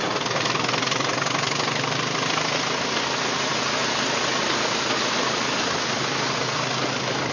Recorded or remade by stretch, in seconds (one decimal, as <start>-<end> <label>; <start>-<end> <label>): 0.0-7.3 recorded